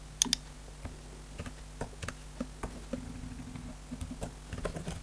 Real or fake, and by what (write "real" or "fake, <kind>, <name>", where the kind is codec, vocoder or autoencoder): real